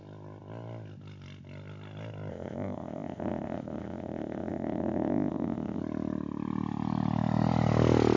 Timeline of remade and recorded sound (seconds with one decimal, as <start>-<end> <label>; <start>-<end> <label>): 0.0-2.3 recorded; 2.3-5.8 remade; 5.8-8.2 recorded